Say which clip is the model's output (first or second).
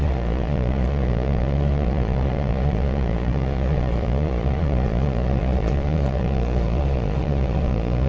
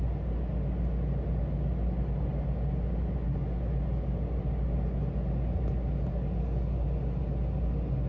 first